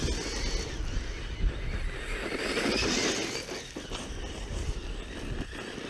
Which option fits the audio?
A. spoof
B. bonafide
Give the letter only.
B